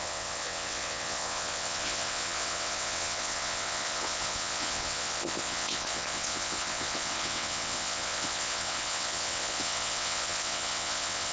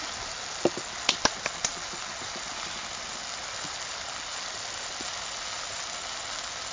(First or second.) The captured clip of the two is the second